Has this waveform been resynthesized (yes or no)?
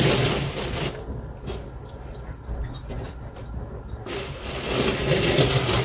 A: no